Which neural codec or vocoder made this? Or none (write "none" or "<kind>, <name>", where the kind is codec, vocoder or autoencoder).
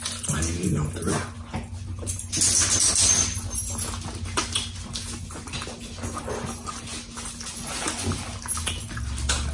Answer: none